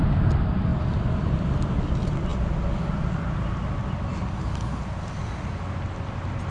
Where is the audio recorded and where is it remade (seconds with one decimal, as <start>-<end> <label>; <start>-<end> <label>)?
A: 0.0-0.7 recorded; 0.7-1.9 remade; 1.9-6.5 recorded